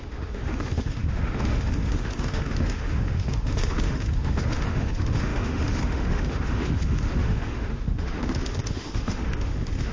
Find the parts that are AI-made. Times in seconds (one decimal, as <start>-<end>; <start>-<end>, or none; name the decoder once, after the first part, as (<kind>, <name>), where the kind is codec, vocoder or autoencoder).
0.0-9.9 (autoencoder, DAC-VAE)